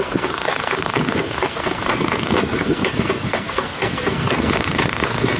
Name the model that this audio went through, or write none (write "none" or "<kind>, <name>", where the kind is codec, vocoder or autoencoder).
codec, SNAC